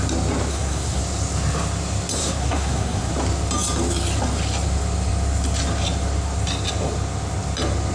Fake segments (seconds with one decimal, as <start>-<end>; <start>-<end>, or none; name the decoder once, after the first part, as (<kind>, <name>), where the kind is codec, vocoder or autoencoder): 0.5-1.0 (codec, SNAC); 2.2-3.1